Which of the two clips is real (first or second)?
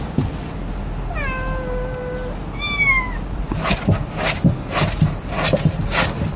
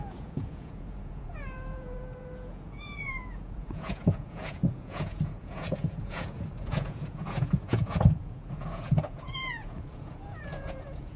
first